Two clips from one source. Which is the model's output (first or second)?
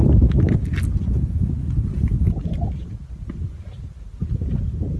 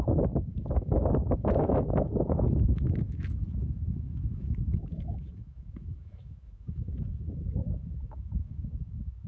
second